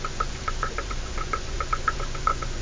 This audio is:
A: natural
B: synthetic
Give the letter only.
B